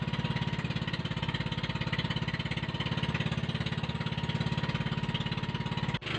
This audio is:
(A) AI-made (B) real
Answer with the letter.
B